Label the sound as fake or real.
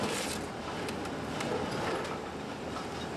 real